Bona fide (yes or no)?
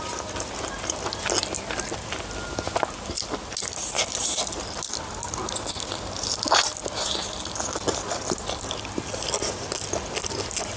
yes